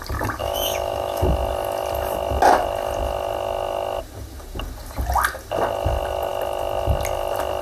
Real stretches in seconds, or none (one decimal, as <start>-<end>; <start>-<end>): 0.0-0.4; 1.2-7.6